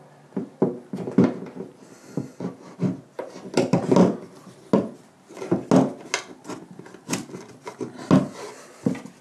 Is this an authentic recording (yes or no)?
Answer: yes